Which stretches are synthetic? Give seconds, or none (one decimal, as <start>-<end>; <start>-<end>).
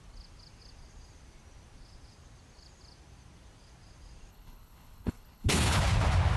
4.3-5.8